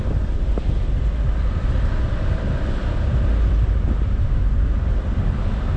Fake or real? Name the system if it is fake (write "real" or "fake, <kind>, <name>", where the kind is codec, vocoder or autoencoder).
fake, vocoder, BigVGAN v2